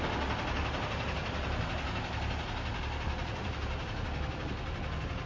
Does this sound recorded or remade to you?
recorded